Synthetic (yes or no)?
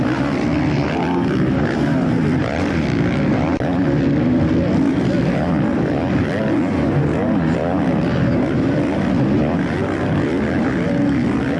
no